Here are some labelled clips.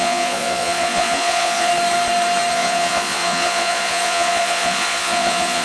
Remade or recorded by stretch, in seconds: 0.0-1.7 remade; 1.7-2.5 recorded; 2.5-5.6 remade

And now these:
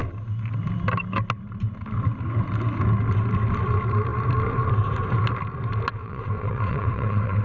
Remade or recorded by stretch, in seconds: 0.0-6.0 recorded; 6.0-7.4 remade